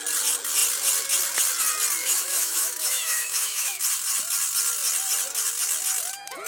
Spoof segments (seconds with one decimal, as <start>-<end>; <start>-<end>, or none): 2.0-3.8